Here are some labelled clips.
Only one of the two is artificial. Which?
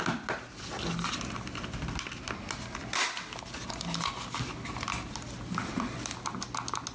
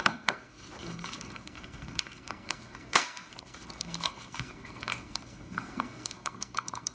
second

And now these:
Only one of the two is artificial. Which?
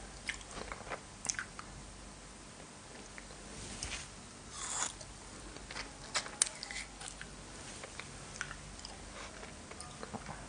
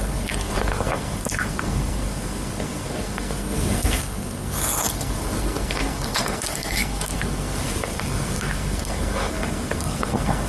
second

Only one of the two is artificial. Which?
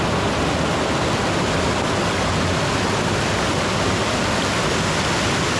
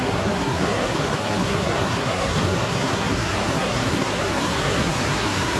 second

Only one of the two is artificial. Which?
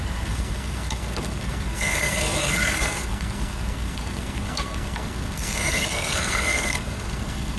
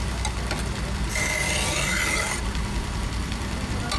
first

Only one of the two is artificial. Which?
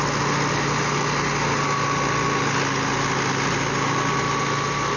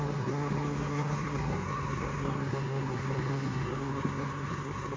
second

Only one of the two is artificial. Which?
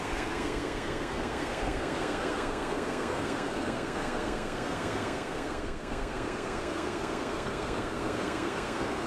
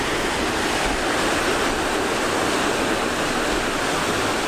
first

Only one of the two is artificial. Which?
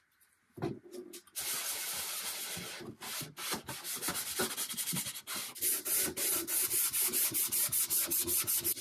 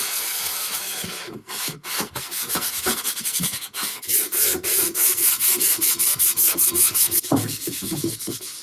second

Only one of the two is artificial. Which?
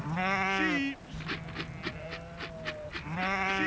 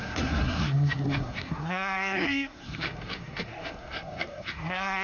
second